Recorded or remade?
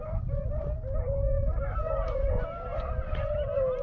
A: remade